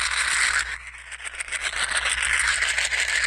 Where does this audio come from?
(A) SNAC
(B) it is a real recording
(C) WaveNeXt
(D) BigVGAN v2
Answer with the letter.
B